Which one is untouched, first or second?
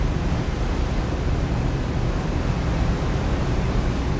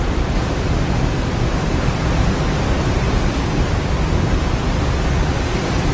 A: first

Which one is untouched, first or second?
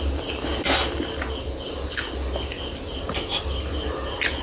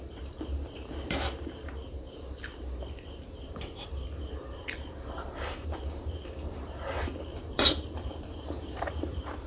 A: first